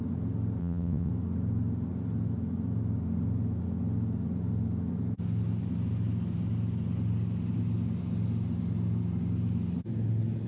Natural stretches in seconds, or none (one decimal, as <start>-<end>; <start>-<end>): 0.0-0.6; 1.1-10.5